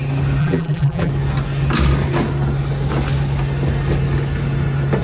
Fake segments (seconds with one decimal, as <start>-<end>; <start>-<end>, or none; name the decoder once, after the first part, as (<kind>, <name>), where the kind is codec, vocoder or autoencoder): 0.4-1.1 (vocoder, BigVGAN v2)